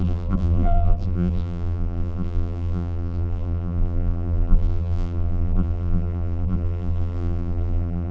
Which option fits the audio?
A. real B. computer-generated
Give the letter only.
B